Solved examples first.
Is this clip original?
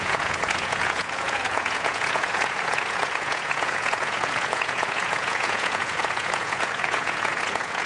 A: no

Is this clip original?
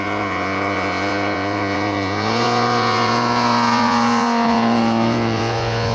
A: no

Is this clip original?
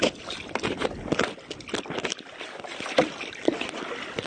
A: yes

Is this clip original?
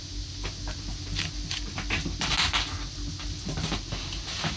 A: yes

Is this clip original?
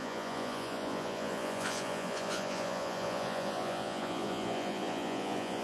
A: no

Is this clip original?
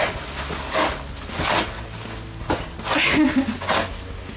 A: yes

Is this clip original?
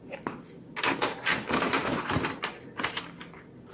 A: yes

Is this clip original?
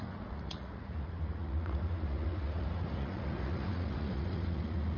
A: no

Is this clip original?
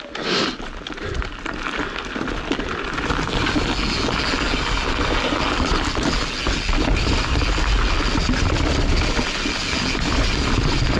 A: yes